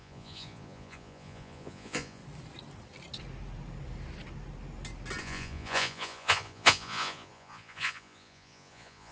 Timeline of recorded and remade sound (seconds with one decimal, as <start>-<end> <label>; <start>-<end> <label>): 0.0-2.2 remade; 2.2-5.2 recorded; 5.2-9.1 remade